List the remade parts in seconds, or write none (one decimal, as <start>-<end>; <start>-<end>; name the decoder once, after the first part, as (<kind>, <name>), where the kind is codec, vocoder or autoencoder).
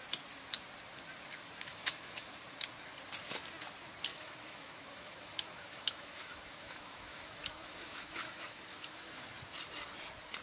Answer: 1.7-2.3 (autoencoder, DAC-VAE); 4.1-9.1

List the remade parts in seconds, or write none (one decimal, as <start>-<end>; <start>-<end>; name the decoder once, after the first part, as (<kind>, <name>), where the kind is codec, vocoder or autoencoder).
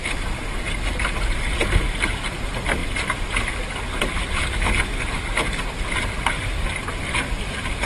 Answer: none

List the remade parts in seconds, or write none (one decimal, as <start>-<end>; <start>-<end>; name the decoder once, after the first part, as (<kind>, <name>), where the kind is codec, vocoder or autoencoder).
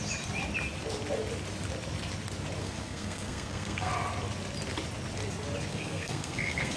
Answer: 2.6-3.9 (codec, SNAC); 5.7-6.8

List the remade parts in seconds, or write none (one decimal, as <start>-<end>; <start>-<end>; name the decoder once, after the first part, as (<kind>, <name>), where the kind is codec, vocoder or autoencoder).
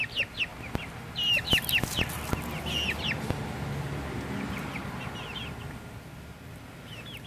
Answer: none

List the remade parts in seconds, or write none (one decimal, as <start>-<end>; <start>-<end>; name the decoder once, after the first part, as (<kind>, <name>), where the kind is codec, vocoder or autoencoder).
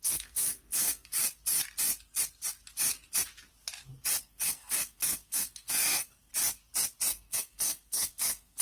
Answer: 0.0-1.2 (codec, SNAC); 4.2-6.3; 7.1-8.6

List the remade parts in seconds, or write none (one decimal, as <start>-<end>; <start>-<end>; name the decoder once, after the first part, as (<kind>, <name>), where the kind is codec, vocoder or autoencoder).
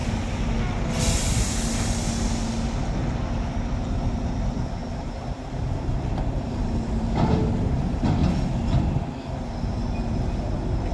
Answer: 4.8-7.3 (vocoder, BigVGAN v2)